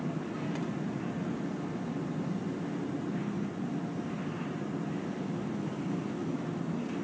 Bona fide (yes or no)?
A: yes